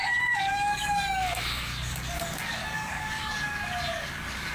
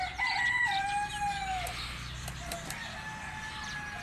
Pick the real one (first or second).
second